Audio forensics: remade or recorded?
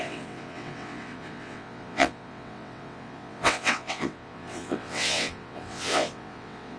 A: remade